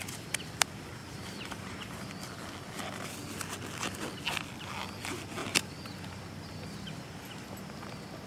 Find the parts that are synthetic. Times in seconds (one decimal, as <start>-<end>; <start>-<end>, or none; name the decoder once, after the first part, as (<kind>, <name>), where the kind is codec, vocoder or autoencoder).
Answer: 1.0-2.1 (vocoder, BigVGAN v2); 5.4-6.2